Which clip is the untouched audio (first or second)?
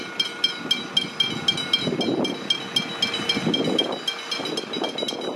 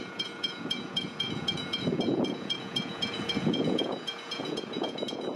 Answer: first